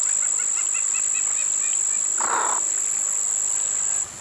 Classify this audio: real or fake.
real